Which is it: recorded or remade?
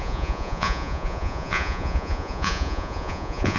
remade